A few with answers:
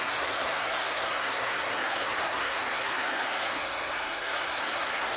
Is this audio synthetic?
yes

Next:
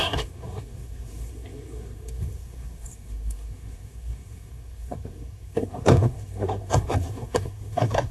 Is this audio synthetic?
yes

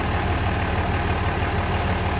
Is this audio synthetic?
no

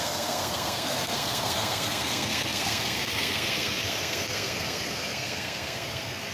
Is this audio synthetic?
yes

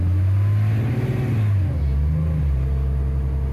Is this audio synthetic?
no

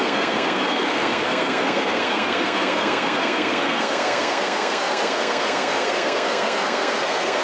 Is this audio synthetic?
yes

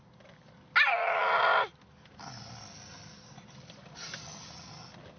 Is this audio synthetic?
no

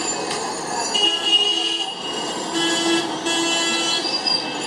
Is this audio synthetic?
no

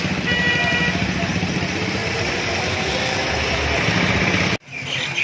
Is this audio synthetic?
no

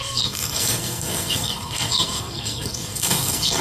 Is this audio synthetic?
yes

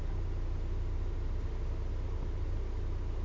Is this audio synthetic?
no